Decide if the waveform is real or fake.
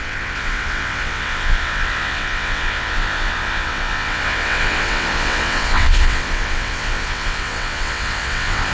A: fake